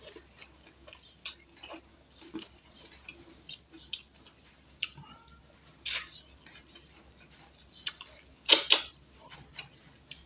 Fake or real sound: real